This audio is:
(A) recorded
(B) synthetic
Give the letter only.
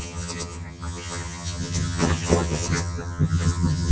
B